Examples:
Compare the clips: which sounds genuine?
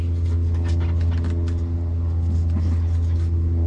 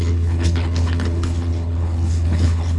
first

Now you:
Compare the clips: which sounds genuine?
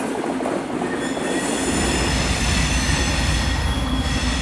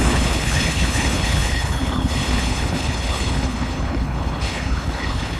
first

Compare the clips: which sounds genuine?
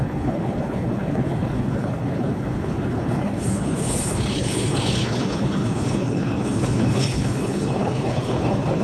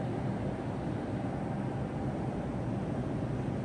second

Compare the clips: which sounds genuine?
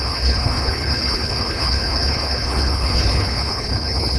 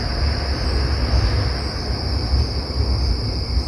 second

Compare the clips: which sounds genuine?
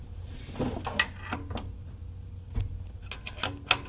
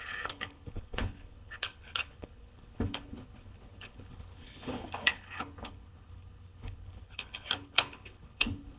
first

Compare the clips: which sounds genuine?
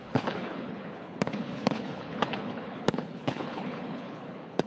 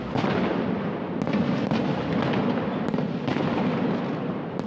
second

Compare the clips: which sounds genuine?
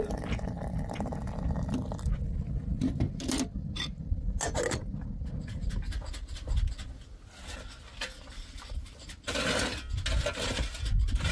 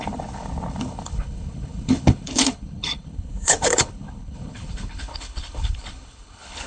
first